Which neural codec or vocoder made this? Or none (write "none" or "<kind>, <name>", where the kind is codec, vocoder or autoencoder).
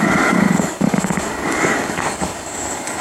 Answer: codec, DAC